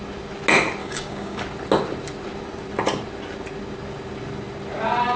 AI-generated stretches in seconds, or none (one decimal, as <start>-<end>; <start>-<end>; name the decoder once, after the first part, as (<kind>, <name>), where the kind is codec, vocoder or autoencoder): 0.8-1.4 (codec, DAC)